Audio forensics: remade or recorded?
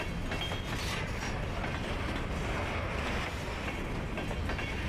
recorded